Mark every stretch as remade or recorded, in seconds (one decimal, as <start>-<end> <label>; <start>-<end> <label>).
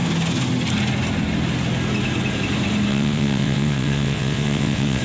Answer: 0.0-2.9 recorded; 2.9-5.0 remade